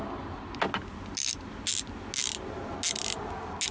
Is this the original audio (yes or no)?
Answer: yes